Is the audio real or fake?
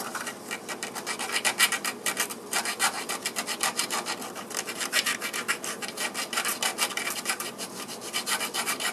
fake